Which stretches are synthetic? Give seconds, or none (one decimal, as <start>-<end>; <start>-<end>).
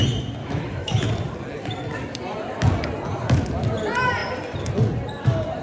0.4-1.1